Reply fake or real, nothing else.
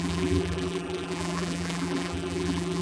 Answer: fake